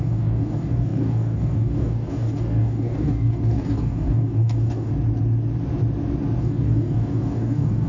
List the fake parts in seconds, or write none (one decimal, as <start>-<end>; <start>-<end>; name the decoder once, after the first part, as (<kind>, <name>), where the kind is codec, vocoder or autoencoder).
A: 0.0-4.9 (codec, DAC); 6.4-7.9